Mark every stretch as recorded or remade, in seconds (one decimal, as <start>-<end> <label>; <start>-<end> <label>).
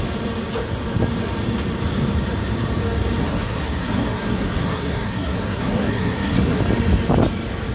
0.0-3.2 recorded; 3.2-6.6 remade; 6.6-7.7 recorded